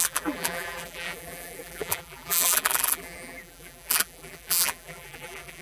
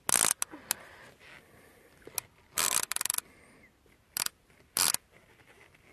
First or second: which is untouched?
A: second